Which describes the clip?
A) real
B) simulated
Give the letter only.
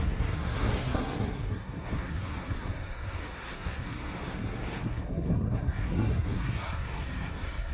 B